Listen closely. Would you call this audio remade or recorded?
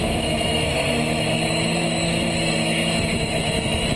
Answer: remade